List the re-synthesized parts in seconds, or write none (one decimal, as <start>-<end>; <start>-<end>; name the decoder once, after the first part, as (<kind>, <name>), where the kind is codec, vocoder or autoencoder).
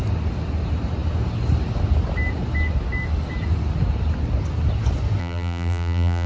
5.2-6.3 (vocoder, BigVGAN v2)